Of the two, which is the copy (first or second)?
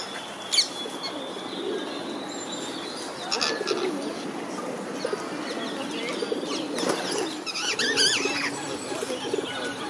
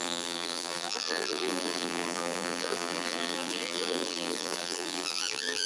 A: second